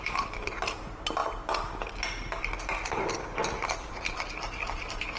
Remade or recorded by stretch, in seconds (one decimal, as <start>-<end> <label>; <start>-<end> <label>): 0.0-5.2 recorded